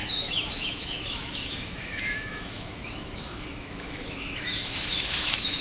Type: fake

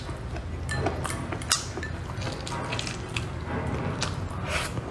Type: real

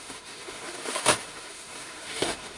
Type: fake